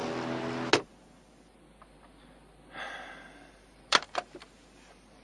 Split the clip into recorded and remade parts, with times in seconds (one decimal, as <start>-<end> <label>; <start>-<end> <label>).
0.0-3.1 recorded; 3.1-5.2 remade